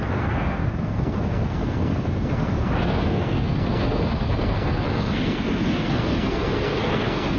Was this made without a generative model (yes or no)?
no